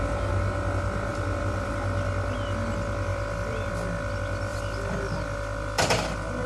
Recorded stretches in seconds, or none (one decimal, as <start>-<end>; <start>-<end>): 0.0-1.1; 1.7-3.1; 3.7-4.5; 6.1-6.5